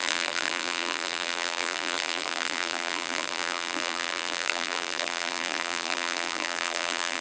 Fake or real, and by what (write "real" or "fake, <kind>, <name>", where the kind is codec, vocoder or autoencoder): fake, vocoder, BigVGAN v2